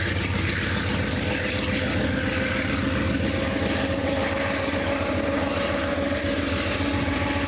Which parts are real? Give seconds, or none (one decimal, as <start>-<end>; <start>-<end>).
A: 0.0-4.0; 6.2-7.5